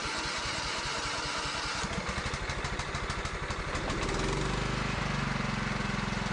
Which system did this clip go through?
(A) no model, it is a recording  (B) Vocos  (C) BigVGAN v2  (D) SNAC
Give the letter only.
A